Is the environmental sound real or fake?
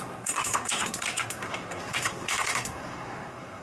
fake